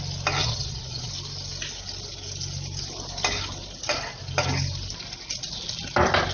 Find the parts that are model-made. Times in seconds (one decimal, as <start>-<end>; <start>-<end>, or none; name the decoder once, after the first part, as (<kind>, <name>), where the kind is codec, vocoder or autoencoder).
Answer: 0.4-1.1 (vocoder, Vocos)